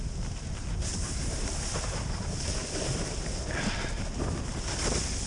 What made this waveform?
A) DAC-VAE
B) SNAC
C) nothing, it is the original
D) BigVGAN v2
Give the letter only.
C